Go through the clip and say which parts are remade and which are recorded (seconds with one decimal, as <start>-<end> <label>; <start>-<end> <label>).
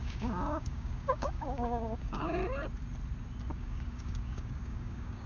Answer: 0.0-2.4 remade; 2.4-3.5 recorded; 3.5-5.3 remade